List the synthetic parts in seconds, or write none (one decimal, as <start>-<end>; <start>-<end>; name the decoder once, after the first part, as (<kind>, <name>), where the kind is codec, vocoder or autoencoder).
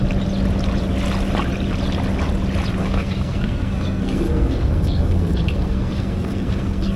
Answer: 2.8-7.0 (codec, SNAC)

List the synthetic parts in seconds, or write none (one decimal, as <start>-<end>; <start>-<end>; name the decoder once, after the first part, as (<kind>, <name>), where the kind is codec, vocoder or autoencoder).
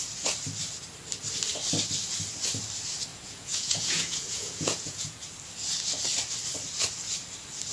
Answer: 3.1-5.2 (vocoder, Vocos)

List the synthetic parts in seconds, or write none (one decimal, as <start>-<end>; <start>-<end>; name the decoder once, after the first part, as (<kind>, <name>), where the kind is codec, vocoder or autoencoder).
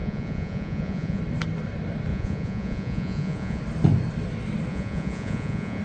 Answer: 0.0-1.2 (vocoder, Vocos); 2.1-3.6; 4.7-5.8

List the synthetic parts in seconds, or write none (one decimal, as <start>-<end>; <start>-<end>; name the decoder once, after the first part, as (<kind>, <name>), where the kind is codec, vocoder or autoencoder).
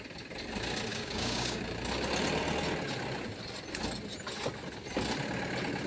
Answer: 0.9-1.6 (codec, DAC)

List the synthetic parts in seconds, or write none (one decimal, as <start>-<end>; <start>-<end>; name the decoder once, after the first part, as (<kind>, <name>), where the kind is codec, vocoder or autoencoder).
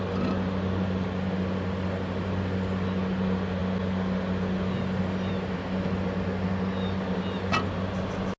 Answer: none